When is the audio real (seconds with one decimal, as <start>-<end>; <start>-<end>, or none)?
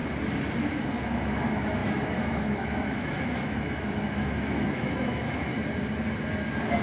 0.0-0.6; 5.5-6.8